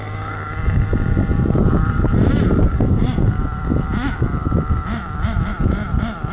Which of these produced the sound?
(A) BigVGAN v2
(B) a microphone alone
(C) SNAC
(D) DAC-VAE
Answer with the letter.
B